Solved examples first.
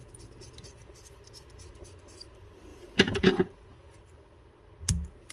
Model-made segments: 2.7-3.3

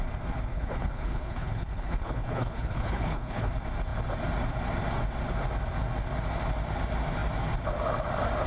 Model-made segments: 0.5-3.5

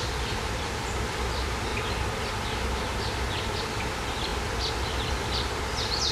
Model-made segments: 0.0-1.7; 3.6-6.1

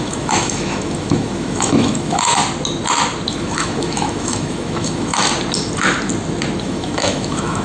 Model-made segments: 0.0-2.4; 3.3-5.3; 6.6-7.6

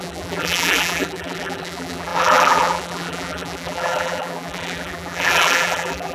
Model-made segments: 0.0-6.1